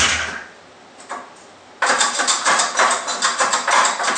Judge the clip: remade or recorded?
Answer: recorded